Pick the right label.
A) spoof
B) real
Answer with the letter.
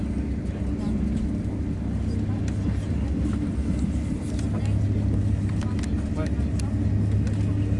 B